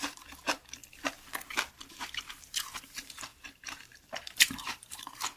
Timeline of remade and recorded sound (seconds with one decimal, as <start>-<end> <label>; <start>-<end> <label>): 0.0-0.8 remade; 0.8-2.0 recorded; 2.0-5.4 remade